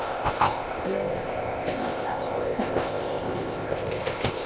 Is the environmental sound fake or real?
fake